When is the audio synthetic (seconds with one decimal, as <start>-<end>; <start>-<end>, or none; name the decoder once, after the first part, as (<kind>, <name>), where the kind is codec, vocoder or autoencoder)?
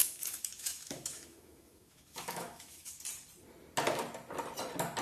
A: 0.0-3.0 (autoencoder, DAC-VAE)